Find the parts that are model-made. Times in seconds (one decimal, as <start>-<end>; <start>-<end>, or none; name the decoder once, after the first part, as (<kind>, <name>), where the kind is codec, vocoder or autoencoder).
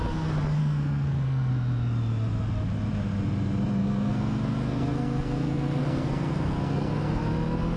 0.6-1.5 (codec, SNAC); 3.8-7.2